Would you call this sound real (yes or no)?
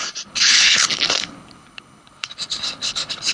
no